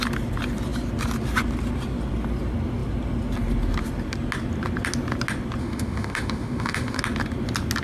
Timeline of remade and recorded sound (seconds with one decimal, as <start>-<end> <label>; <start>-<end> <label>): 0.0-5.6 recorded; 5.6-7.0 remade; 7.0-7.8 recorded